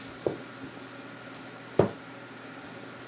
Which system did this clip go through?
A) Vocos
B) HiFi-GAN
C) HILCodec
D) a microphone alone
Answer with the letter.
D